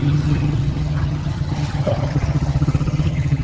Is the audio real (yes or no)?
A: no